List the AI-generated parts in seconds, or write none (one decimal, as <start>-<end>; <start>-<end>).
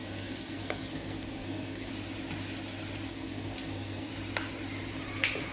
0.0-1.9; 3.1-4.1